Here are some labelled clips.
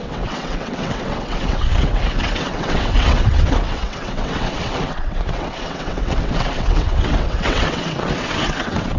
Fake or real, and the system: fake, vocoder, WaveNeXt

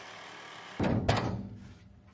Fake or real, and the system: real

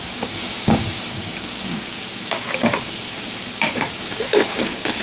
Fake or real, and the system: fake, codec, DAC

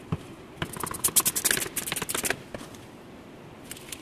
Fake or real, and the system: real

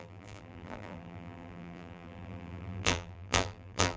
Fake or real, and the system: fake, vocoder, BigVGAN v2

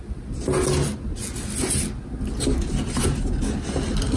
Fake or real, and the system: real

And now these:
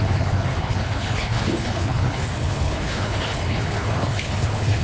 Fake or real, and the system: fake, codec, HILCodec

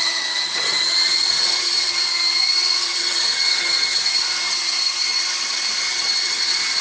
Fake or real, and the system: fake, vocoder, HiFi-GAN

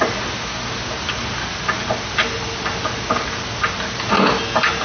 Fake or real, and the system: real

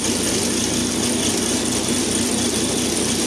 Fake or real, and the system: real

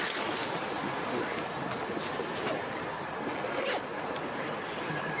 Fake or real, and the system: real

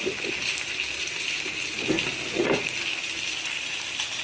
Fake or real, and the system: real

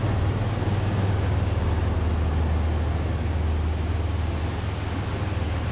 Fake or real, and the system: real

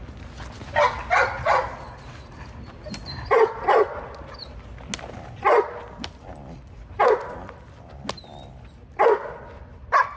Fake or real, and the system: real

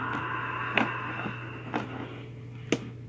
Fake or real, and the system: real